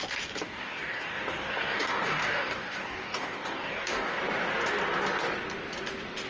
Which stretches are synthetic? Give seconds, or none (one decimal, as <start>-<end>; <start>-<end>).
0.4-4.2